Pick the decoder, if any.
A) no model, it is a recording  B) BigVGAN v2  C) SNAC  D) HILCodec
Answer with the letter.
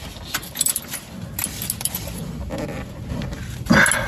A